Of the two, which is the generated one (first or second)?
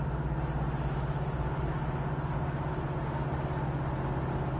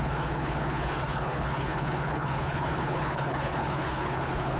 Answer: second